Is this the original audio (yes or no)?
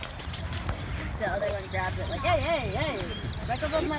yes